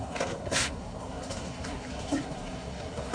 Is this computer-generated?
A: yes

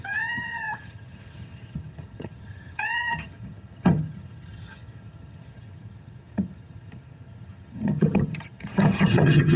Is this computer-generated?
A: yes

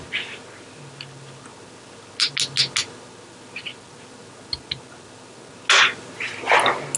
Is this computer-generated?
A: no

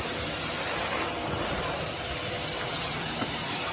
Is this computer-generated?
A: no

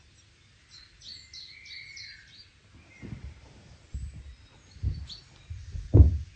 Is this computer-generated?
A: no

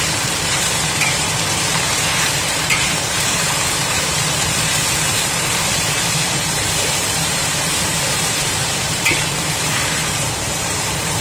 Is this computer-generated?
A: yes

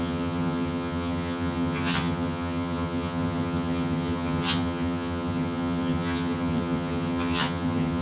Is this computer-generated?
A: yes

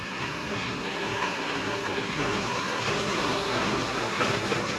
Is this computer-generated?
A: yes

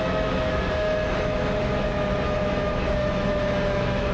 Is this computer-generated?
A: yes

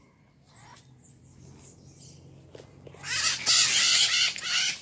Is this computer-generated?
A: no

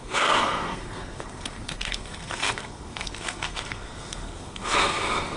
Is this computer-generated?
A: yes